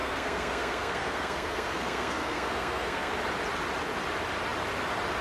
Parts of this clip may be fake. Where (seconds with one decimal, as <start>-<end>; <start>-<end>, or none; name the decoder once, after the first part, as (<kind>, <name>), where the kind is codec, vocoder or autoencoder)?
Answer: 0.0-3.1 (codec, SNAC)